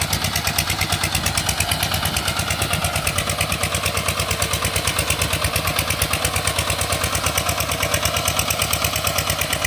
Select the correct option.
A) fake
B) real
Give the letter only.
B